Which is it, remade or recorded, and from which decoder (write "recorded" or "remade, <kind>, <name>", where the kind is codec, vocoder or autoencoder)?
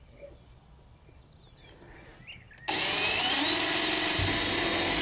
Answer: recorded